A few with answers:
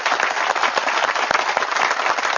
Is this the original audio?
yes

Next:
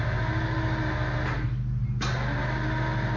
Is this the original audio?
yes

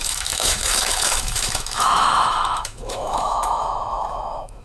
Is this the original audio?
no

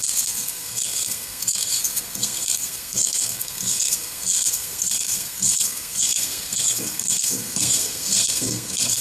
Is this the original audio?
no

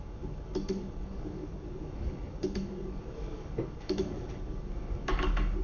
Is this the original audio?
no